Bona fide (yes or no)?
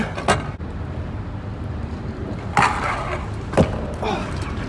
yes